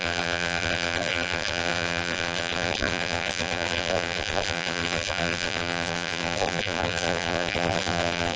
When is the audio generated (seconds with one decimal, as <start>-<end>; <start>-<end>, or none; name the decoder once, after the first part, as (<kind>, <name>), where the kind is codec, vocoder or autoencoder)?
0.0-8.4 (vocoder, BigVGAN v2)